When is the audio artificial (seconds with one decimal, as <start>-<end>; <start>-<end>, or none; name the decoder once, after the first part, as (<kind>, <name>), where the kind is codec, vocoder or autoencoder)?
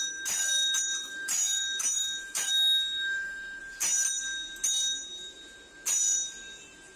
1.0-3.6 (autoencoder, DAC-VAE)